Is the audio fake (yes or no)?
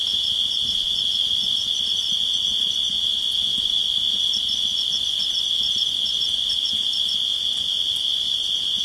yes